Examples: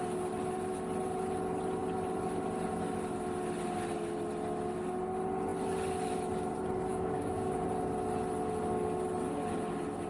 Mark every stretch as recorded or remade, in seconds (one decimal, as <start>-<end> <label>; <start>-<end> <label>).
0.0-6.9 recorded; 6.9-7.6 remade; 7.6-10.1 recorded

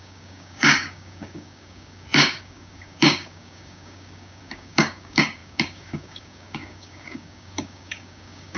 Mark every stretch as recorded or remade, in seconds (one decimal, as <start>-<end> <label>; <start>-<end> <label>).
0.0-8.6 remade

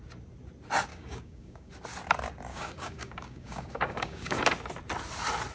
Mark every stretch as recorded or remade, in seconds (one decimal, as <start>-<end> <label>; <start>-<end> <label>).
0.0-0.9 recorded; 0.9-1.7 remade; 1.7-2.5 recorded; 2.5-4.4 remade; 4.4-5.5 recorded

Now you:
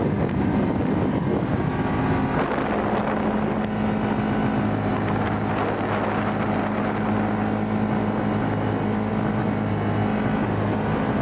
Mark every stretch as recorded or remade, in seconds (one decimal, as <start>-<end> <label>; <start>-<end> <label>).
0.0-11.2 recorded

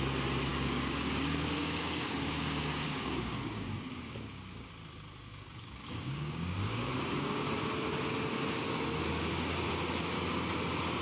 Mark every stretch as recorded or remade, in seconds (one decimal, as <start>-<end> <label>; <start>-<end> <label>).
0.0-0.5 recorded; 0.5-4.7 remade; 4.7-5.3 recorded; 5.3-7.5 remade; 7.5-11.0 recorded